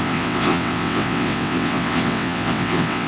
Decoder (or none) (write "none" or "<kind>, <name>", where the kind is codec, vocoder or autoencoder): vocoder, WaveNeXt